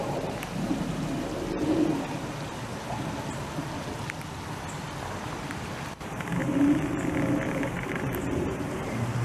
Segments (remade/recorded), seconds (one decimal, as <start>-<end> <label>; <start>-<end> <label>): 0.0-1.6 remade; 1.6-5.5 recorded; 5.5-6.4 remade; 6.4-7.5 recorded; 7.5-9.2 remade